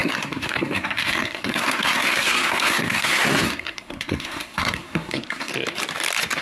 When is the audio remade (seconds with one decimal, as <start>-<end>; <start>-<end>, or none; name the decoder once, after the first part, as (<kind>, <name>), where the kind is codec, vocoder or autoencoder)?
0.0-5.5 (codec, SNAC)